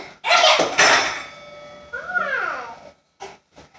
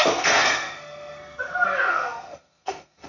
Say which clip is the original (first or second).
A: first